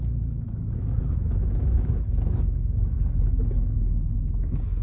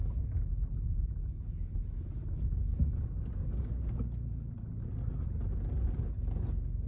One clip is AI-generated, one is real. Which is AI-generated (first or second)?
first